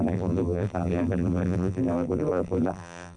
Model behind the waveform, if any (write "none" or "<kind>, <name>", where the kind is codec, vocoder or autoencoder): vocoder, BigVGAN v2